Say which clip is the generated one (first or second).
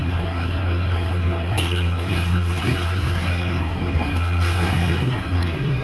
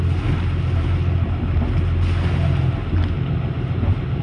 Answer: first